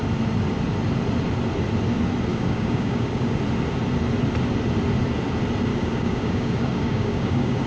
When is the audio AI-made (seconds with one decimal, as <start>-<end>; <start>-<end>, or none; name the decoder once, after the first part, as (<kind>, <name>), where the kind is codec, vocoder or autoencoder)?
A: 2.3-3.4 (codec, DAC); 5.7-7.7